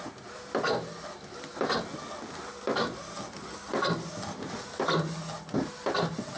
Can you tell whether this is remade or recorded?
recorded